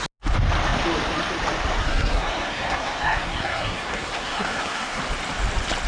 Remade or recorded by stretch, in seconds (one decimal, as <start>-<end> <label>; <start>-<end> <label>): 0.0-1.8 recorded; 1.8-5.0 remade; 5.0-5.9 recorded